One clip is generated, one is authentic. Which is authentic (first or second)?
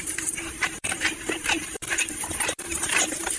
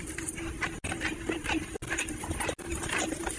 second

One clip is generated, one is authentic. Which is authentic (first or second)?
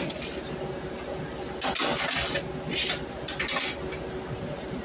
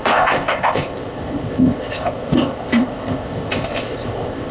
first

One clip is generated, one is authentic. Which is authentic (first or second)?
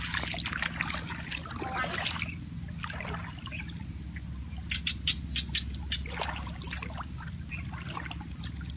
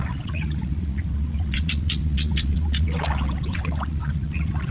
first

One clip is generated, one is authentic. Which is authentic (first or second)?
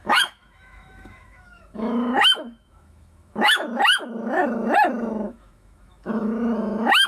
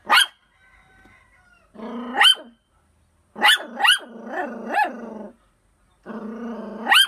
second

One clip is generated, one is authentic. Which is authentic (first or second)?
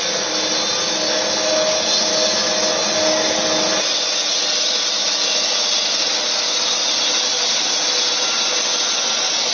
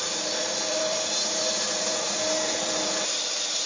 first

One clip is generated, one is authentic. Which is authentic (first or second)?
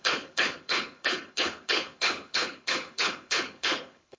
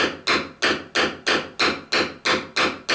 second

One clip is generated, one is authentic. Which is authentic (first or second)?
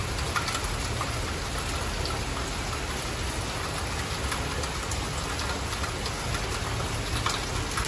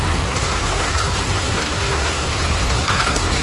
first